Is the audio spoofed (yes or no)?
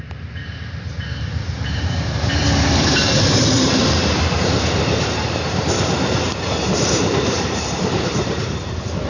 yes